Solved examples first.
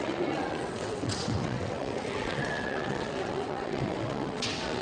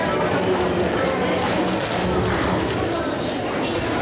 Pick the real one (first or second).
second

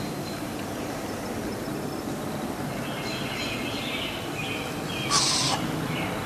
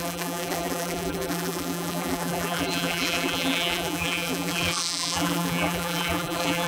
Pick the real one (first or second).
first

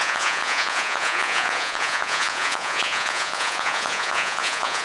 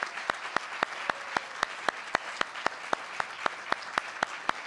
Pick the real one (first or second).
second